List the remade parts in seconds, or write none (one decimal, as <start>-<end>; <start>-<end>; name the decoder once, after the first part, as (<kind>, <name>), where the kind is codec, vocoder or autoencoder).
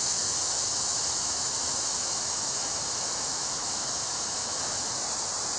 0.0-5.0 (autoencoder, DAC-VAE)